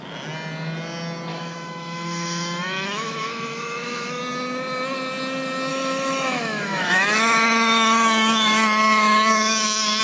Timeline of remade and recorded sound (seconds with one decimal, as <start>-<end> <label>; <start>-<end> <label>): 0.0-1.3 recorded; 1.3-4.2 remade; 4.2-5.7 recorded; 5.7-10.0 remade